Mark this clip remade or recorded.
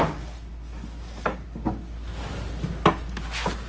recorded